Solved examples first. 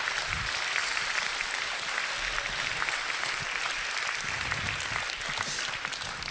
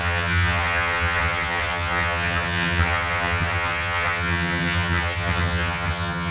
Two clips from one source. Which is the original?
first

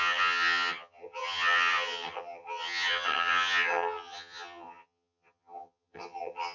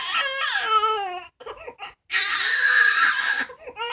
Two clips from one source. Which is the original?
second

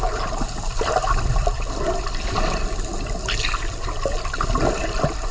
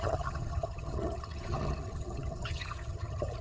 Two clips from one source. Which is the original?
first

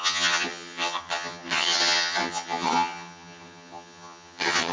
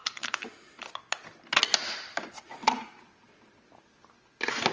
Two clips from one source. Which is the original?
second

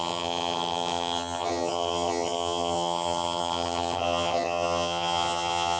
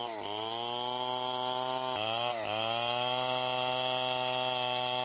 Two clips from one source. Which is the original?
second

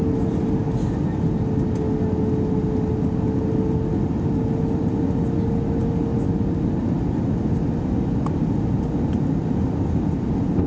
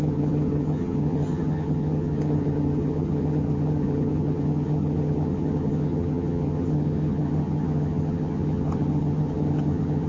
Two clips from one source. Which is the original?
first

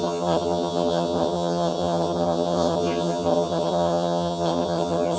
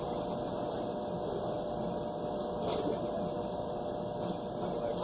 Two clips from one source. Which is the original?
second